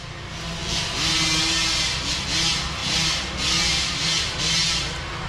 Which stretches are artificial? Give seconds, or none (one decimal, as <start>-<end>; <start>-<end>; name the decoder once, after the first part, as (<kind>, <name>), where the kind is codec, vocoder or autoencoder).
none